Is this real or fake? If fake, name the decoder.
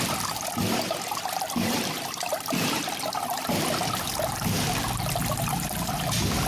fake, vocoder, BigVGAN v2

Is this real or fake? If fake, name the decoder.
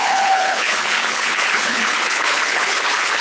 fake, codec, HILCodec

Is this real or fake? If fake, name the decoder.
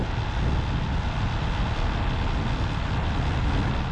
real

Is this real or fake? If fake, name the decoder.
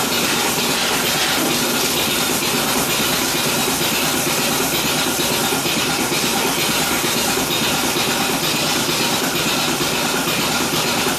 real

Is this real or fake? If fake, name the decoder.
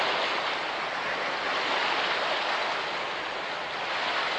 real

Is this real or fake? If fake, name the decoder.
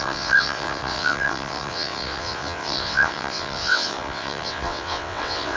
fake, vocoder, WaveNeXt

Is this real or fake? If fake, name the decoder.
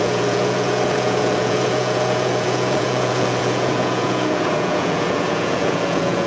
fake, vocoder, Vocos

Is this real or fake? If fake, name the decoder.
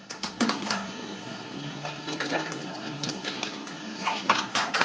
fake, codec, SNAC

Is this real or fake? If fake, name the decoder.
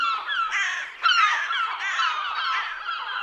real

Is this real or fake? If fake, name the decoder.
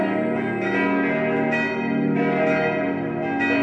real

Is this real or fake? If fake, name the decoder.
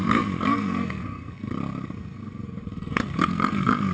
fake, codec, SNAC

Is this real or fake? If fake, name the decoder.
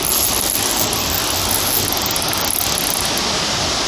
real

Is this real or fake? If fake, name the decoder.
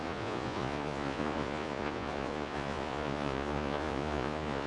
fake, vocoder, Vocos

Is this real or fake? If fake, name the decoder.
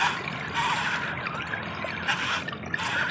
real